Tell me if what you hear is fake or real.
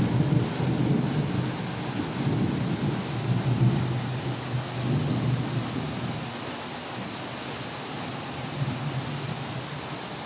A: real